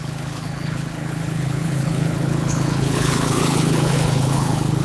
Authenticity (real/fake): fake